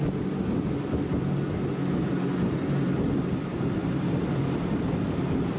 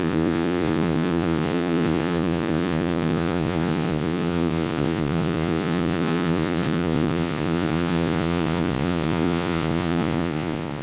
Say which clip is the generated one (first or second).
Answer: second